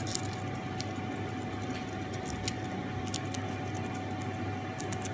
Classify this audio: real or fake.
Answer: real